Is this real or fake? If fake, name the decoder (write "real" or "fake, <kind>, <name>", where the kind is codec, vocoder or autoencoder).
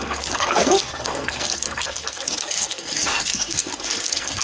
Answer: fake, codec, SNAC